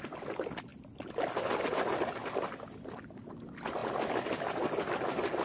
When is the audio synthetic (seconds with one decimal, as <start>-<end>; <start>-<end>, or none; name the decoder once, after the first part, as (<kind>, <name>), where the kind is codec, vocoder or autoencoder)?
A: none